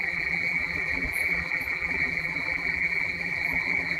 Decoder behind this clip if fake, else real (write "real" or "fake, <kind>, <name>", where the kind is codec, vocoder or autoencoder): fake, vocoder, BigVGAN v2